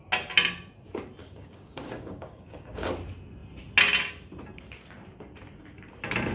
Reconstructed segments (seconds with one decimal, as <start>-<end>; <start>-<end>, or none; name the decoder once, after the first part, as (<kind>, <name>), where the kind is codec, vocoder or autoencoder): 1.2-2.9 (codec, DAC)

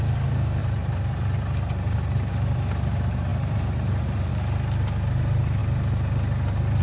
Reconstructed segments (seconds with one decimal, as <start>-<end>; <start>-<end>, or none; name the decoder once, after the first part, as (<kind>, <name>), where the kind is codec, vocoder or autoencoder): 0.6-2.3 (vocoder, BigVGAN v2); 3.3-4.3

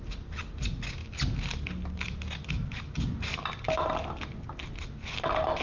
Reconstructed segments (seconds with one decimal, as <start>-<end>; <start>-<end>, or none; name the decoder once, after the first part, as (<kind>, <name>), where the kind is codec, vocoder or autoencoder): none

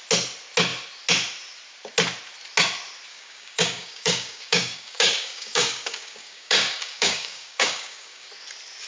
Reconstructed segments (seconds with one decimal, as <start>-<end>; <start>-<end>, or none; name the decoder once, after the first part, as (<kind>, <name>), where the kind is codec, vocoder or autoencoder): 3.1-8.3 (codec, DAC)

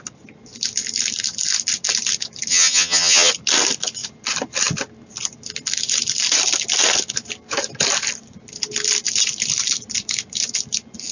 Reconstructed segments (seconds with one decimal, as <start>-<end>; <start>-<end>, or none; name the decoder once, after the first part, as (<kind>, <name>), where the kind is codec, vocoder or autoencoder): 2.5-3.3 (vocoder, HiFi-GAN)

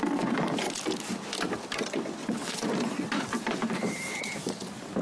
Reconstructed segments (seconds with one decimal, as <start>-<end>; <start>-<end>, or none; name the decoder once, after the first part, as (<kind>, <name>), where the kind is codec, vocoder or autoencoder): 2.2-2.7 (vocoder, WaveNeXt)

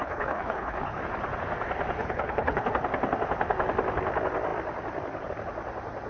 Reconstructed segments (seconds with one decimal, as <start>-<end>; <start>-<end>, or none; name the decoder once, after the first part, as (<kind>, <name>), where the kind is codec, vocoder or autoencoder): 0.0-1.0 (codec, HILCodec); 2.0-2.7

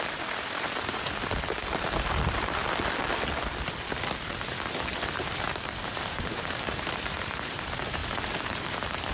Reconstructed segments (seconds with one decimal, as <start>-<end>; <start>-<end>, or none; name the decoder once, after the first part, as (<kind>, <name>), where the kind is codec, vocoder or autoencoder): 0.0-1.2 (vocoder, BigVGAN v2); 1.8-2.6; 5.2-8.0; 8.6-9.1